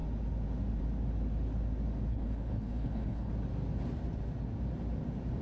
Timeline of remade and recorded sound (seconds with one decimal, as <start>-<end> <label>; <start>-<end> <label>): 0.0-2.1 recorded; 2.1-3.3 remade; 3.3-5.4 recorded